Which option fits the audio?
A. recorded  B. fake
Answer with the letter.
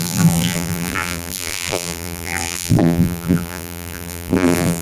B